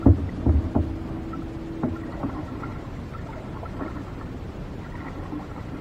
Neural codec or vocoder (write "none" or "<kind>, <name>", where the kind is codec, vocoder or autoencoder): none